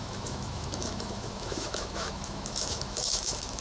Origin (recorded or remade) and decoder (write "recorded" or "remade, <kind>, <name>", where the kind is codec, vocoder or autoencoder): remade, autoencoder, DAC-VAE